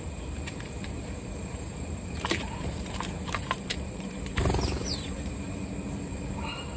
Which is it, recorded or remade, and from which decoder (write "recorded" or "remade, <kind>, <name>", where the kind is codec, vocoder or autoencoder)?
remade, vocoder, BigVGAN v2